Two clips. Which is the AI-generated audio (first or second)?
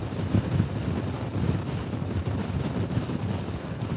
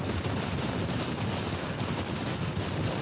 first